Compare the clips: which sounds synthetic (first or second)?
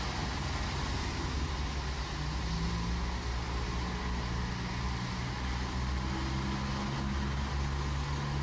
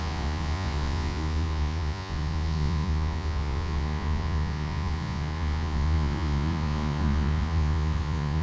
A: second